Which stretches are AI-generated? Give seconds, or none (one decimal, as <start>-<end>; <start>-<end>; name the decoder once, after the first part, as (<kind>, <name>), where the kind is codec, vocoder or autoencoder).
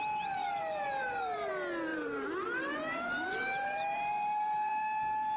0.4-1.5 (vocoder, BigVGAN v2); 1.9-5.4